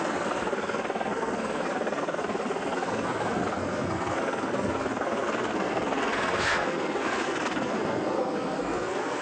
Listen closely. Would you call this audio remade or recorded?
remade